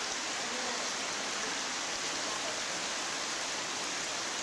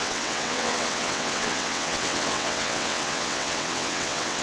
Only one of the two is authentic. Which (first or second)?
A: first